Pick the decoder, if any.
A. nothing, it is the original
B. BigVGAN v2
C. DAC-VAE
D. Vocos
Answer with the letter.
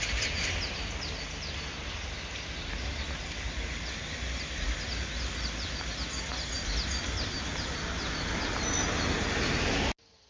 A